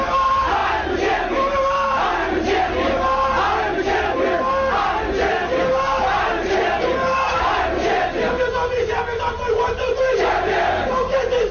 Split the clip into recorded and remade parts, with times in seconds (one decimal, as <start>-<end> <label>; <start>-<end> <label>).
0.0-11.5 recorded